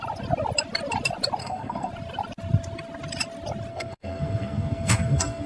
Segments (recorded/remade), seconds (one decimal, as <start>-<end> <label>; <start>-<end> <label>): 0.0-1.4 recorded; 1.4-1.9 remade; 1.9-3.7 recorded; 3.7-5.5 remade